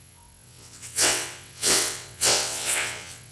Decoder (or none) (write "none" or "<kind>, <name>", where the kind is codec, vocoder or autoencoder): vocoder, WaveNeXt